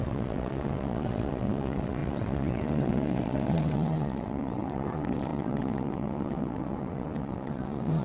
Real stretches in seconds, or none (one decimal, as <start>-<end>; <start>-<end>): none